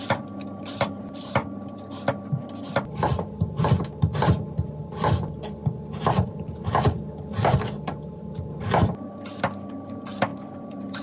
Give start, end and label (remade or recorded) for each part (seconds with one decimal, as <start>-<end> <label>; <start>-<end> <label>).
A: 0.0-10.3 recorded; 10.3-11.0 remade